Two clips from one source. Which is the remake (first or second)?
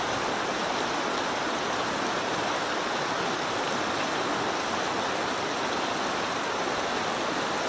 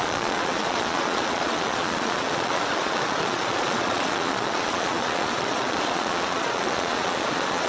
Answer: second